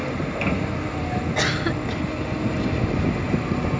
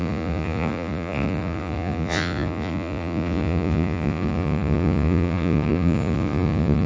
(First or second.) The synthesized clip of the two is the second